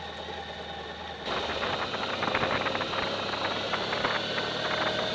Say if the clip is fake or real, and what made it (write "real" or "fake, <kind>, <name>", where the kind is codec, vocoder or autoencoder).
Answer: real